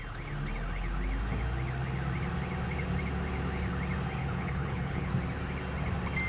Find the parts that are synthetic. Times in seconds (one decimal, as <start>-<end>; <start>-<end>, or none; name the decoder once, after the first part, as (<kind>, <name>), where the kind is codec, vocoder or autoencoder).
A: 4.2-5.1 (codec, HILCodec)

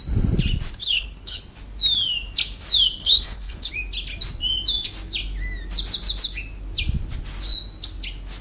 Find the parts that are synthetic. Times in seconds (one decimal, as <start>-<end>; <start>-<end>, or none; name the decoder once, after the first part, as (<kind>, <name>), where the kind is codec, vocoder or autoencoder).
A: 0.8-1.4 (codec, HILCodec); 3.0-3.7

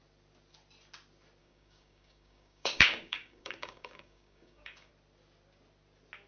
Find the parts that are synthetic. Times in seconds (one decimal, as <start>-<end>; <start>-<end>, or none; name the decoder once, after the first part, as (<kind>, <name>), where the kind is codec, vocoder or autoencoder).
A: 1.4-4.9 (codec, DAC)

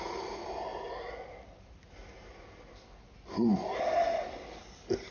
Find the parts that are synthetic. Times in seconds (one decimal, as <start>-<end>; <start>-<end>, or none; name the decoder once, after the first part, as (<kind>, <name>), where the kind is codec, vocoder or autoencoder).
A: none

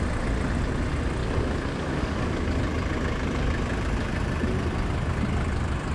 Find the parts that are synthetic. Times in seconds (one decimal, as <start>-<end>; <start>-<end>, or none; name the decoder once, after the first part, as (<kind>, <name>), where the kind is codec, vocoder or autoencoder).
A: 1.2-2.6 (codec, DAC)